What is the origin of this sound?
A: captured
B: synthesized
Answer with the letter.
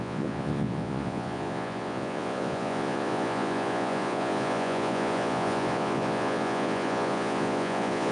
B